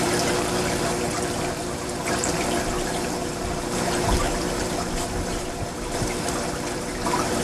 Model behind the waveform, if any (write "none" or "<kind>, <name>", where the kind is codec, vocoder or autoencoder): vocoder, BigVGAN v2